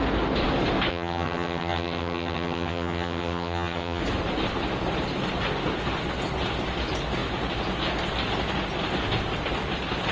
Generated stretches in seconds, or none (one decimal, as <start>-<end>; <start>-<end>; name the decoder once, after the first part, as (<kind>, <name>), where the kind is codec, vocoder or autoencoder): 0.9-4.0 (vocoder, HiFi-GAN)

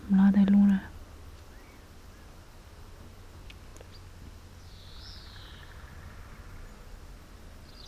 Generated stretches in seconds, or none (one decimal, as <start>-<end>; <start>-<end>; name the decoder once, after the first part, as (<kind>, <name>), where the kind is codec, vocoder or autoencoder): none

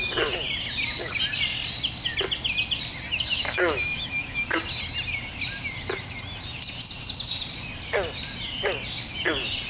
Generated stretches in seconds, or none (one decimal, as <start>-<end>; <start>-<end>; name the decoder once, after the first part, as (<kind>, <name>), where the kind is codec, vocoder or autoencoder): 3.3-4.5 (autoencoder, DAC-VAE)

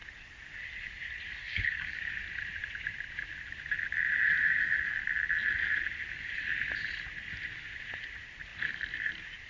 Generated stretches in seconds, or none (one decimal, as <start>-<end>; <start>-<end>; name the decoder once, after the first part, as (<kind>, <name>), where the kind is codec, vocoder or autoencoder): 1.4-2.1 (codec, DAC)

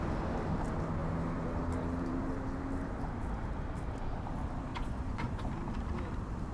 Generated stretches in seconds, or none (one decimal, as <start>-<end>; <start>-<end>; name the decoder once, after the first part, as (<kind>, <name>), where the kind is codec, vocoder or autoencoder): 4.7-5.5 (vocoder, Vocos)

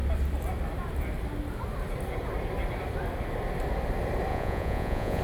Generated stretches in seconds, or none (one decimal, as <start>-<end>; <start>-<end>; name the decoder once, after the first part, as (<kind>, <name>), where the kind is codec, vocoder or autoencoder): 4.3-5.2 (vocoder, Vocos)

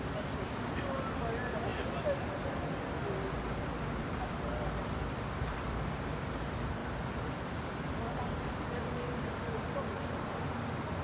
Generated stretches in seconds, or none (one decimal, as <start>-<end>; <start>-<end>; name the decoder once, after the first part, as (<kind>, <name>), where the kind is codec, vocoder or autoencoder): 0.0-1.7 (vocoder, BigVGAN v2); 3.4-6.8; 8.3-11.0